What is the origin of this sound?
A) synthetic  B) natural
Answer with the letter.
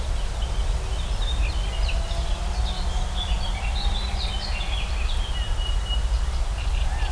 B